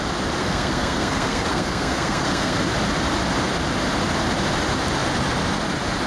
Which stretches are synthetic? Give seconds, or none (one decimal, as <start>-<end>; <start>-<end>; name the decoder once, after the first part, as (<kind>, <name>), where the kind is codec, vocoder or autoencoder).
0.4-2.6 (codec, SNAC)